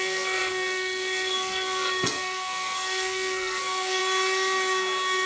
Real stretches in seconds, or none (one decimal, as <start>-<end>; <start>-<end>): 4.0-5.3